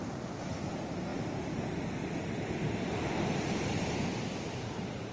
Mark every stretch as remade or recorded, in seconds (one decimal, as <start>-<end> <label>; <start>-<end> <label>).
0.0-5.1 recorded